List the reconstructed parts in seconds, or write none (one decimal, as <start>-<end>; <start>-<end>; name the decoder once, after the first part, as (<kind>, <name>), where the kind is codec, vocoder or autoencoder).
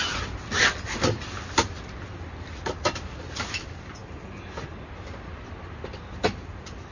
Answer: none